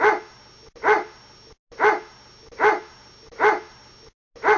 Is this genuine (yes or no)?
yes